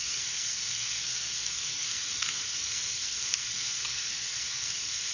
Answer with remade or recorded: remade